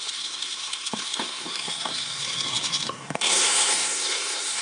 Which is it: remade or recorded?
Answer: remade